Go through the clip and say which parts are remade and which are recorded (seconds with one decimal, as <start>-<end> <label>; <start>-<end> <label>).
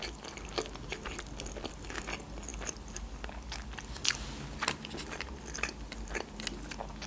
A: 0.0-7.1 recorded